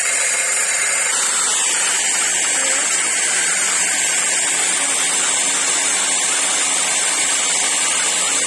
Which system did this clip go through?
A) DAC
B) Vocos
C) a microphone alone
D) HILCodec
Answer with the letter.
C